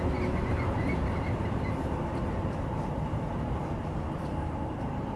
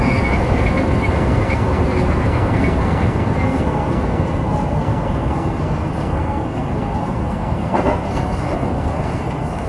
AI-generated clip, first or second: second